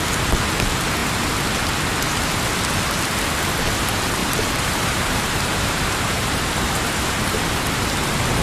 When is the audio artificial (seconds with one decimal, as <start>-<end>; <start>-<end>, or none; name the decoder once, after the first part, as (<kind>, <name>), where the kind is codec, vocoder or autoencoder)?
4.2-7.4 (vocoder, BigVGAN v2)